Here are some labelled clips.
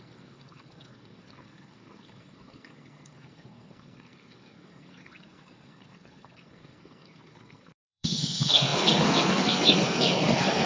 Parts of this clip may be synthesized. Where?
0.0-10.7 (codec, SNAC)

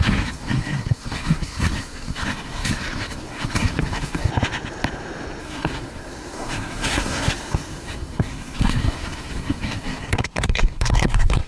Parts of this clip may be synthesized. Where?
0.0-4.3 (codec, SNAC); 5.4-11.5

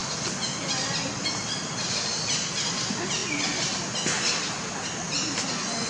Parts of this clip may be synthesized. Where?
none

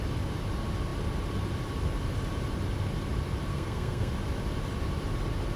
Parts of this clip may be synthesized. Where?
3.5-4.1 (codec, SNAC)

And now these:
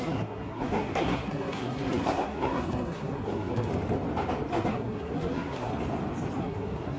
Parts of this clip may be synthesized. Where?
0.0-3.7 (codec, SNAC); 4.5-5.7; 6.4-7.0

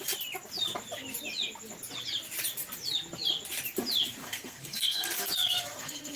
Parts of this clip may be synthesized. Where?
4.2-6.2 (codec, SNAC)

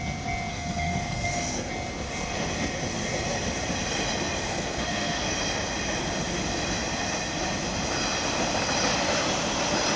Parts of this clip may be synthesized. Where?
0.5-1.7 (codec, SNAC); 4.5-5.3

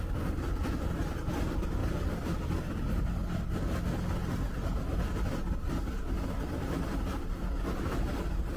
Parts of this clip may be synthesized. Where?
none